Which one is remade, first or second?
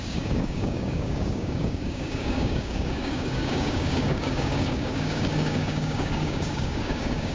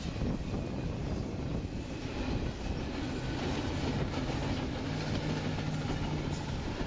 first